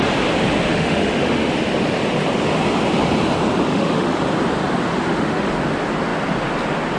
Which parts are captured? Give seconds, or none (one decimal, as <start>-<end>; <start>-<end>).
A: 0.0-0.7; 1.5-3.7; 4.2-4.9; 5.5-7.0